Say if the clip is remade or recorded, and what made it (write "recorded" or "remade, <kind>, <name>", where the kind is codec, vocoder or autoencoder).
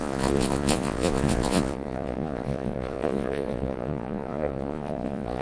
remade, vocoder, Vocos